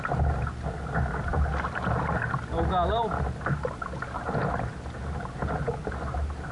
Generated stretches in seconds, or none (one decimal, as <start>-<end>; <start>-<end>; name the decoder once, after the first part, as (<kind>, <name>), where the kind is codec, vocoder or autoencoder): none